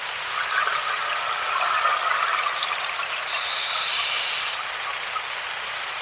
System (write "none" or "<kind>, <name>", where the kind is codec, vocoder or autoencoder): none